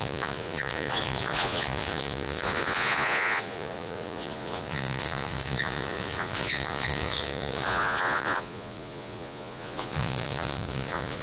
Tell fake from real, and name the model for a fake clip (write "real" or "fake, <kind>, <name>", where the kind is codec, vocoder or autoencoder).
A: fake, vocoder, Vocos